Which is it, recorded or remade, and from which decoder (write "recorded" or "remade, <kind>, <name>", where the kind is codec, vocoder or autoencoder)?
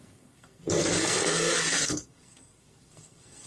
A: remade, codec, SNAC